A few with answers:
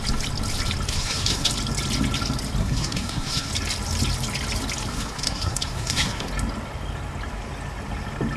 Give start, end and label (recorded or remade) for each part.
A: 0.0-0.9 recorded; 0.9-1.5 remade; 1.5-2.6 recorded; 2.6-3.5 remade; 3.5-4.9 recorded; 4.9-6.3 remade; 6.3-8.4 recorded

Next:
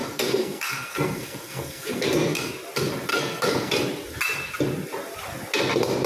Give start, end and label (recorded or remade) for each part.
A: 0.0-2.5 remade; 2.5-3.1 recorded; 3.1-3.7 remade; 3.7-6.1 recorded

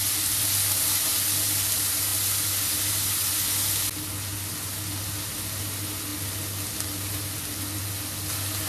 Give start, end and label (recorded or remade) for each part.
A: 0.0-8.7 recorded

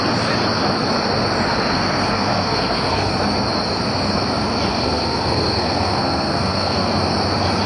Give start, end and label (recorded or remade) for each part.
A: 0.0-1.5 recorded; 1.5-3.1 remade; 3.1-4.7 recorded; 4.7-6.9 remade; 6.9-7.7 recorded